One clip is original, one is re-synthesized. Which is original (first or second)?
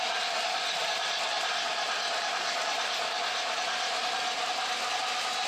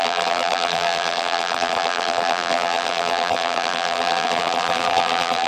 first